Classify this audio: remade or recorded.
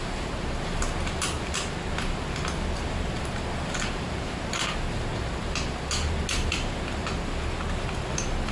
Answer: recorded